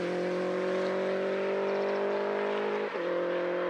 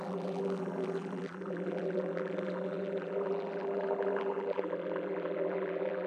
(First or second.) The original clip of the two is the first